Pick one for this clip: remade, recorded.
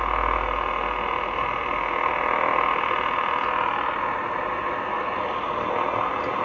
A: recorded